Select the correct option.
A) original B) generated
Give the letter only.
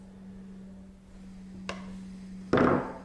A